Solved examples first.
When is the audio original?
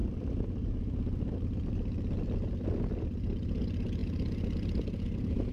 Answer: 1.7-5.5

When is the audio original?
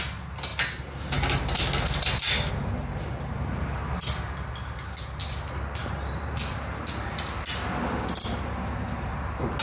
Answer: 0.0-5.8; 6.8-9.6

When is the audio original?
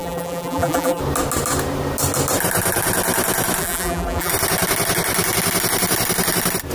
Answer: 1.0-3.6; 4.3-6.7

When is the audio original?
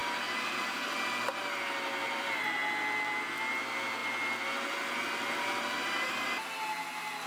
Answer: 0.0-2.0; 2.7-7.3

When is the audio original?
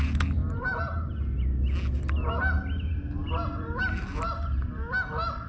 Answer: 0.0-0.4; 1.1-3.2; 3.8-5.5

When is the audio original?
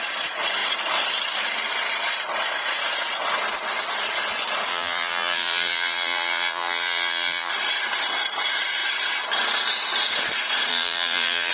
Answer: 0.0-4.7; 7.5-10.7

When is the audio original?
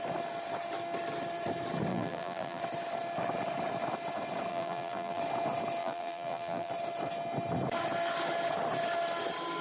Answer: 0.0-1.9; 2.6-4.5; 5.2-5.8; 6.7-9.6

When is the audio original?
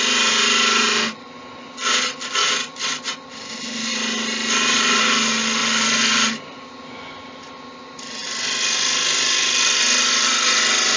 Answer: 0.0-2.4; 3.3-5.6; 6.8-11.0